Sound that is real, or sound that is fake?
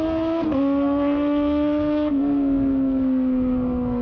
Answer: fake